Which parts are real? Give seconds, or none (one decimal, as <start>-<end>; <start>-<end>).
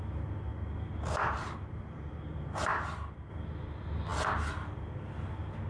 0.0-5.7